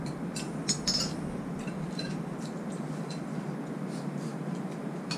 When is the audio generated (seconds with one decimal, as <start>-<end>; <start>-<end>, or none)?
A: none